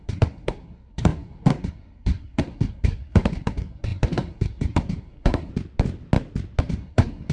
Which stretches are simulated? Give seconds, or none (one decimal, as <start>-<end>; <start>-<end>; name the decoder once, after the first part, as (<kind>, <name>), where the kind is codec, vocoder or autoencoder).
0.0-5.5 (codec, SNAC); 6.6-7.3